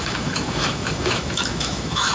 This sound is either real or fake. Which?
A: fake